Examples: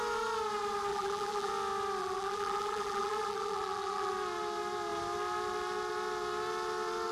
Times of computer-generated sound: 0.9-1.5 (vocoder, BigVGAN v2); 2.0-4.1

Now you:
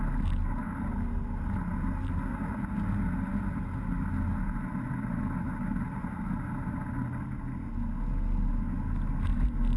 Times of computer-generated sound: none

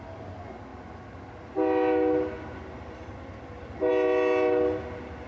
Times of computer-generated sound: none

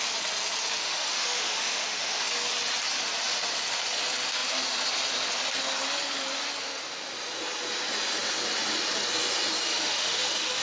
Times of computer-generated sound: 0.8-2.3 (autoencoder, DAC-VAE); 9.7-10.6

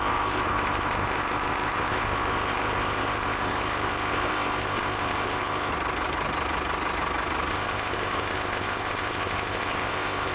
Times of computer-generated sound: 0.0-5.7 (codec, ZipCodec); 7.5-10.3

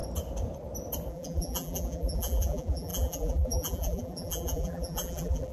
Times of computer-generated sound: 1.1-5.5 (vocoder, BigVGAN v2)

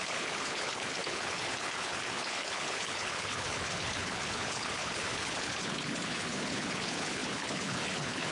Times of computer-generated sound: 0.0-8.3 (codec, HILCodec)

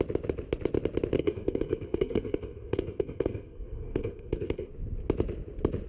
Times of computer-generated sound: 1.2-4.7 (codec, SNAC)